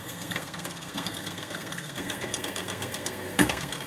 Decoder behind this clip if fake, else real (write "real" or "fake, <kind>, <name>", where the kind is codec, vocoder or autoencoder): fake, codec, SNAC